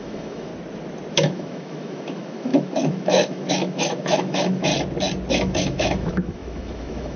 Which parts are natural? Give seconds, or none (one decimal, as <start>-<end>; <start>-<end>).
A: 0.5-1.1; 4.7-5.3